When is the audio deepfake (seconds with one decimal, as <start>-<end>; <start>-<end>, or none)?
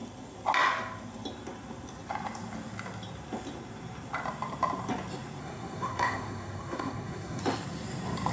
5.4-7.4